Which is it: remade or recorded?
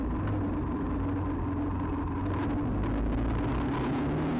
recorded